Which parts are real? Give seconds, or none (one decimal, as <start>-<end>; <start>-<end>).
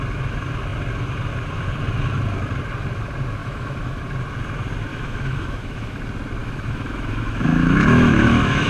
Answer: 0.0-3.4; 4.0-4.9; 6.0-6.4